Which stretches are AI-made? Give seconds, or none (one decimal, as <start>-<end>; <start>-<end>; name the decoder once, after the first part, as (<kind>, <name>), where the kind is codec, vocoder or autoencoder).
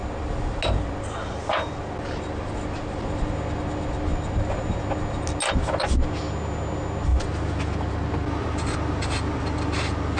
4.1-4.8 (vocoder, BigVGAN v2)